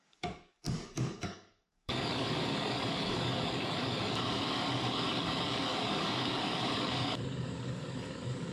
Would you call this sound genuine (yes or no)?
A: no